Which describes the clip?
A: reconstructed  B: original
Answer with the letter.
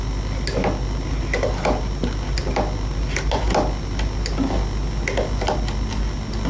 B